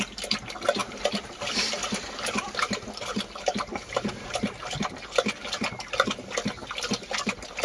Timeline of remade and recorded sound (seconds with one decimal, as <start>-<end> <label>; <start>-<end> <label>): 0.0-7.6 recorded